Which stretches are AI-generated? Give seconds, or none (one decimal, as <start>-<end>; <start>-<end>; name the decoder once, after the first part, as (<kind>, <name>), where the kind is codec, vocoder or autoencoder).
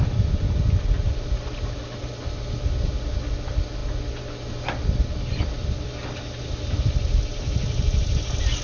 none